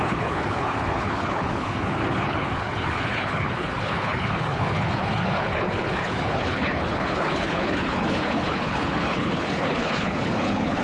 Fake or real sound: fake